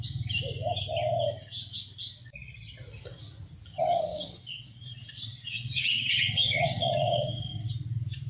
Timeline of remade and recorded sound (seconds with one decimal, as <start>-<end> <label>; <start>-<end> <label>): 0.0-3.9 recorded; 3.9-7.7 remade; 7.7-8.3 recorded